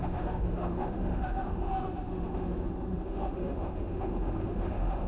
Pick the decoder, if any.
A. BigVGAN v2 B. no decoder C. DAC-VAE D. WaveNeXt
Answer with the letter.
C